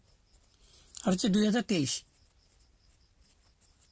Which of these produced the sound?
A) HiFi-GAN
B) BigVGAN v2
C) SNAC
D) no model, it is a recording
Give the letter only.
D